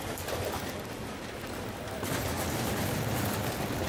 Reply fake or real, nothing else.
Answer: real